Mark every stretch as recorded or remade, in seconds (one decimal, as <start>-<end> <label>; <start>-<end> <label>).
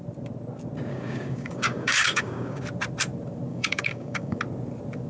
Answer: 0.0-0.9 recorded; 0.9-2.6 remade; 2.6-3.5 recorded; 3.5-4.4 remade; 4.4-5.1 recorded